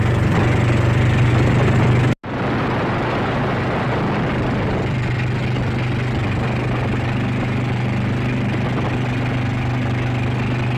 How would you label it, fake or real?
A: real